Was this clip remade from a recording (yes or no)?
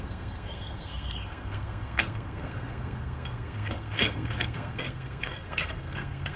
yes